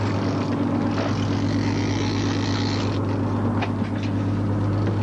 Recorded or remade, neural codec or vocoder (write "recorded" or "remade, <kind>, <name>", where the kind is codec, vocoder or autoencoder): recorded